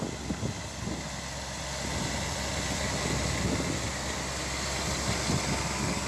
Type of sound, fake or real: real